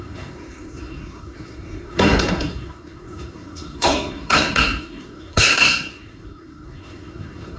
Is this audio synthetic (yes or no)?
yes